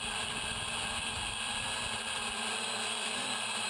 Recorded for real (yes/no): no